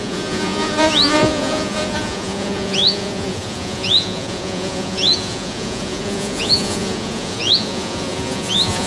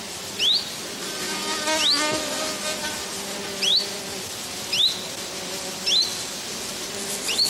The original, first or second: second